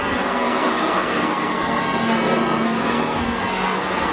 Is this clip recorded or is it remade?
remade